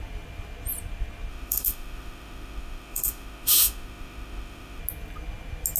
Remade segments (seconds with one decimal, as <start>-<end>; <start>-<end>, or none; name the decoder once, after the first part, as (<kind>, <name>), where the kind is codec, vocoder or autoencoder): 1.3-4.8 (autoencoder, DAC-VAE)